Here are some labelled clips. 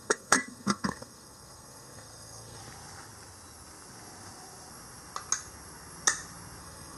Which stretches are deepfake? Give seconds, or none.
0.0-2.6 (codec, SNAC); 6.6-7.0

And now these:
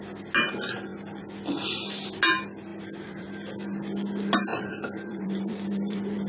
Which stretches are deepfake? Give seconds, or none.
2.7-3.3 (vocoder, BigVGAN v2); 4.5-6.3

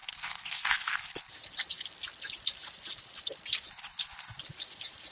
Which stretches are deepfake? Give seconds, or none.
0.0-1.3 (codec, HILCodec); 3.7-4.4

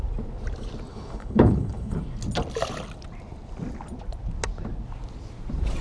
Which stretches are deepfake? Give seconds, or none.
0.9-2.0 (codec, HILCodec)